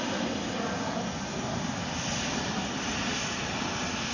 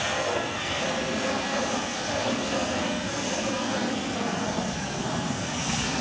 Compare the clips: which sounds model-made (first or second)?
second